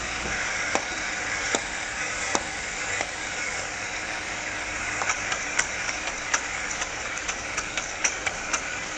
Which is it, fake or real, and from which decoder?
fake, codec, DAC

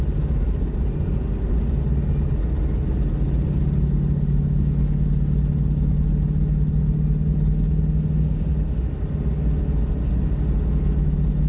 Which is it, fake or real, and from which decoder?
real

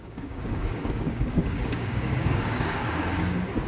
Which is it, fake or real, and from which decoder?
fake, codec, DAC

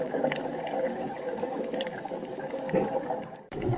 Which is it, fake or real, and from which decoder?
fake, codec, DAC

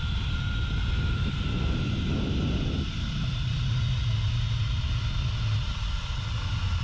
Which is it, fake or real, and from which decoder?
real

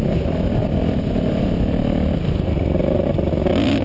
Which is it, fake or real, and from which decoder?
real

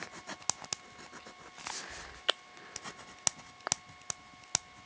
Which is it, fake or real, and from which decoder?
real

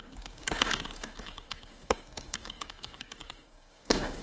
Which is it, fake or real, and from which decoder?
fake, codec, DAC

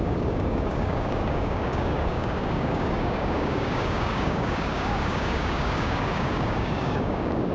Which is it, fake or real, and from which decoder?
fake, codec, DAC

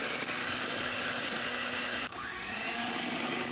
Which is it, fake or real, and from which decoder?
fake, codec, DAC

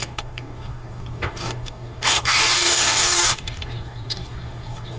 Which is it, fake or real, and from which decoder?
fake, codec, DAC